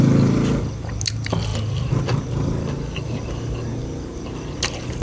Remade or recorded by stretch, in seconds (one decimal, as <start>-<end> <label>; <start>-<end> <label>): 0.0-5.0 recorded